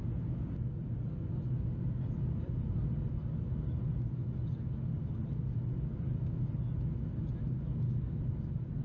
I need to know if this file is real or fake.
real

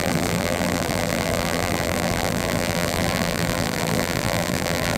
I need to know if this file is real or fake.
fake